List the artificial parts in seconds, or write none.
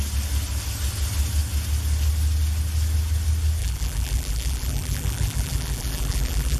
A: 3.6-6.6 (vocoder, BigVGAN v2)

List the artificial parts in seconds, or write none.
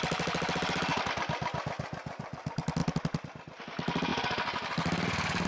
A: 0.0-0.9 (vocoder, BigVGAN v2); 2.2-2.8; 3.6-4.1; 4.7-5.5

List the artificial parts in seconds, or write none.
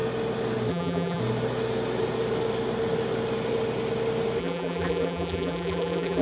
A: 0.7-1.2 (vocoder, BigVGAN v2); 4.4-6.2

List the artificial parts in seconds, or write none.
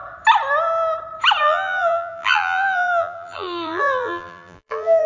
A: 1.4-5.1 (vocoder, BigVGAN v2)